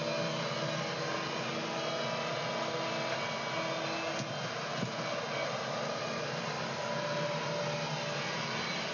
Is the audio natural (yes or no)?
yes